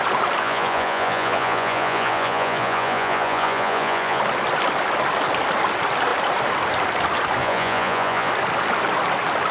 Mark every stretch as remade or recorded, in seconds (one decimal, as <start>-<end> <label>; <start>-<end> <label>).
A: 0.0-0.4 recorded; 0.4-4.2 remade; 4.2-7.4 recorded; 7.4-8.3 remade; 8.3-9.5 recorded